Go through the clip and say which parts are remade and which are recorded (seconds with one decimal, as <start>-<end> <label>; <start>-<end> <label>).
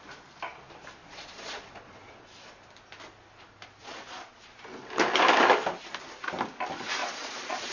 0.0-1.0 recorded; 1.0-2.5 remade; 2.5-3.8 recorded; 3.8-4.4 remade; 4.4-7.0 recorded; 7.0-7.7 remade